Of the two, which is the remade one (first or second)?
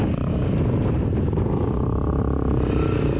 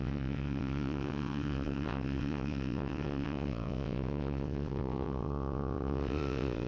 second